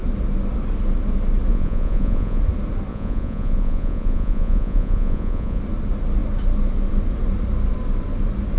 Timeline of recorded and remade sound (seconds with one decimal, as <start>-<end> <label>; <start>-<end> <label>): 0.0-1.5 recorded; 1.5-2.4 remade; 2.4-2.9 recorded; 2.9-5.6 remade; 5.6-8.6 recorded